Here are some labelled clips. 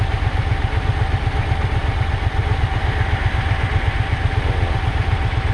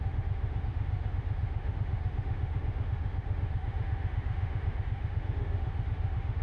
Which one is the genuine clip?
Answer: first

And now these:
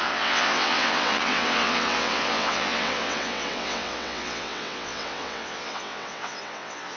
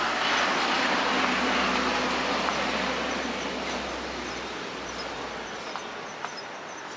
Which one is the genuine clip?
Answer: second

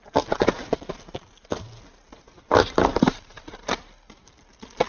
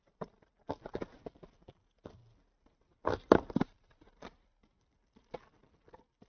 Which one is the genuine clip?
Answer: first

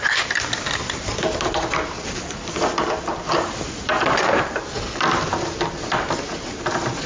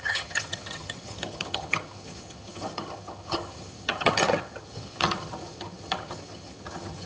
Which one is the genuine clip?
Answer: first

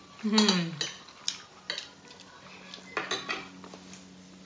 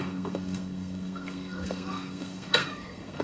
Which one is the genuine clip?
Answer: first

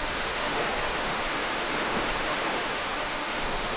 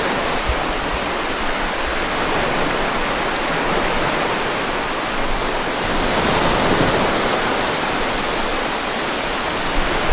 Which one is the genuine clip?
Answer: second